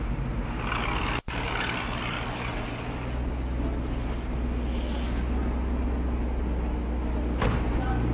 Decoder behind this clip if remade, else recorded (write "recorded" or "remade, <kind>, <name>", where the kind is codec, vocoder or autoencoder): recorded